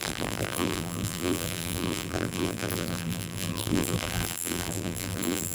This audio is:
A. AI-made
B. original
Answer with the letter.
A